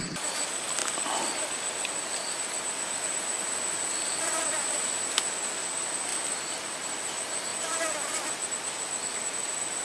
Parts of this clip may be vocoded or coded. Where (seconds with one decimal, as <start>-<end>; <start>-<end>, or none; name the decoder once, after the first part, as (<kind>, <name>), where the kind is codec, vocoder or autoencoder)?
6.1-6.9 (vocoder, BigVGAN v2)